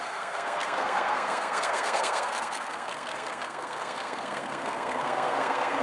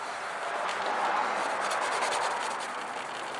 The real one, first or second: second